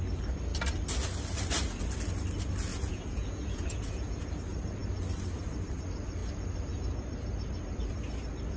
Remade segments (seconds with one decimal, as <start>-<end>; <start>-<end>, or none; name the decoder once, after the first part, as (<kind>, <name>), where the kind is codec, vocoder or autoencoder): 2.7-4.3 (vocoder, Vocos)